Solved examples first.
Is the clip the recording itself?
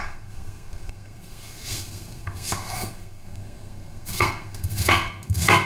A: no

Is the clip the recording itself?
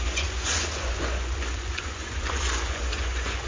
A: no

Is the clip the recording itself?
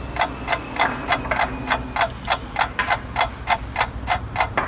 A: yes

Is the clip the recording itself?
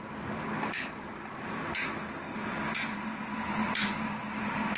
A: yes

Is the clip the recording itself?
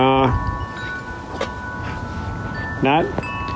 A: yes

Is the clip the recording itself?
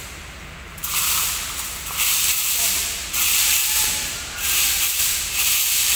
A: no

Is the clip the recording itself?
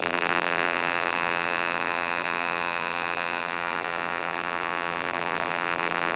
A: no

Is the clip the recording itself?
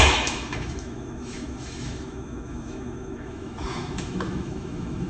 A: no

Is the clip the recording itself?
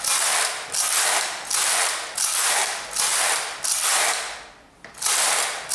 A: yes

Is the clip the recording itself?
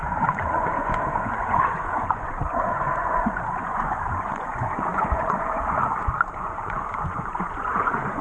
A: no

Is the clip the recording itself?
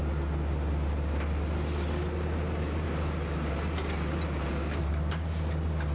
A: yes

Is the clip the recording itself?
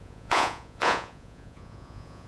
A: no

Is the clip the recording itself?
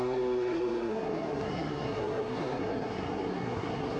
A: no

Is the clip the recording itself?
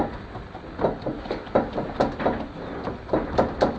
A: yes